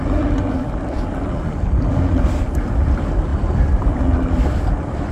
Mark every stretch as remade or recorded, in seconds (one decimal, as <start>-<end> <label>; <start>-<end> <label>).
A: 0.0-5.1 recorded